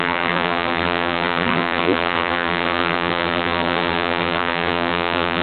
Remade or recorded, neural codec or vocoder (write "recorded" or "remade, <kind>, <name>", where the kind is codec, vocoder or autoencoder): remade, vocoder, BigVGAN v2